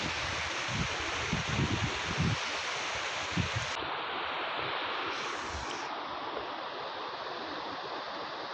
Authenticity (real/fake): real